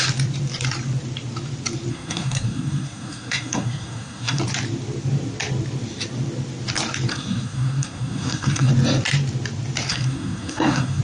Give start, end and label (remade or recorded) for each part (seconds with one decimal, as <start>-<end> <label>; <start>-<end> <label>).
0.0-1.9 recorded; 1.9-4.4 remade; 4.4-7.1 recorded; 7.1-8.7 remade; 8.7-9.9 recorded; 9.9-11.0 remade